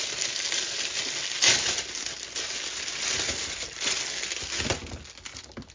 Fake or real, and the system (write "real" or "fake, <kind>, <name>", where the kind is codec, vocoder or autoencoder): real